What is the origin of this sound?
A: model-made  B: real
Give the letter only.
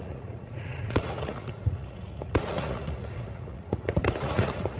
A